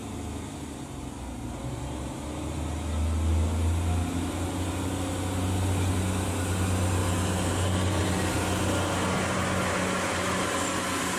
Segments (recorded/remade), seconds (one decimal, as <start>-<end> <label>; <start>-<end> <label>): 0.0-11.2 recorded